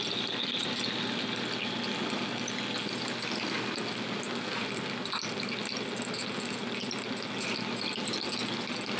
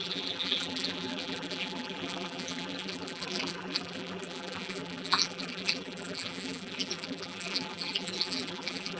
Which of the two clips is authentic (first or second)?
first